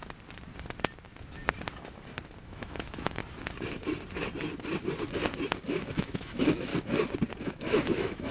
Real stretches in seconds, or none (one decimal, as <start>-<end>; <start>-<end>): 0.0-2.4; 3.2-5.7; 6.7-7.4